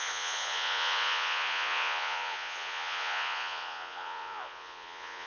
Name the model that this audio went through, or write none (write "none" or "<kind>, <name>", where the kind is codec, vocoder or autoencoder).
vocoder, Vocos